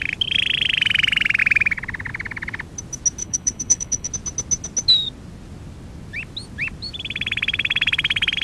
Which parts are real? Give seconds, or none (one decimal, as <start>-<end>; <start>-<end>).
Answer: 0.0-3.2; 4.1-8.4